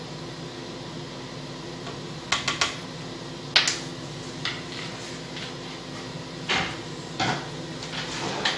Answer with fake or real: real